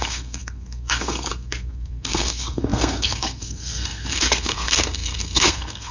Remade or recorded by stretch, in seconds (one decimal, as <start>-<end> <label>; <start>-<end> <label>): 0.0-5.9 remade